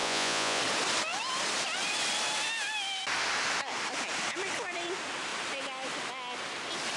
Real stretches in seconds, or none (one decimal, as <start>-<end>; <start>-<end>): 0.6-7.0